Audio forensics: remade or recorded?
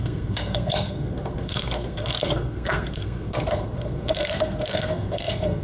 remade